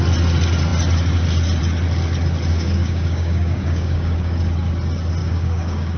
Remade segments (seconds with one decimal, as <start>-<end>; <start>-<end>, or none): 2.5-4.4; 5.2-6.0